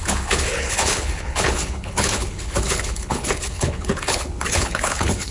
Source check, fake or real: fake